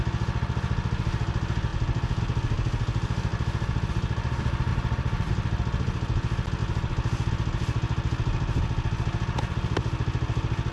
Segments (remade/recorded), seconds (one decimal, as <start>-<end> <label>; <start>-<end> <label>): 0.0-4.7 recorded; 4.7-5.3 remade; 5.3-10.7 recorded